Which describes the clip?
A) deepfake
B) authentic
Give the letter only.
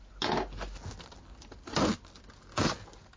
B